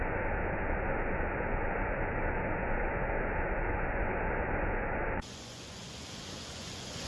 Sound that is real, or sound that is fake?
fake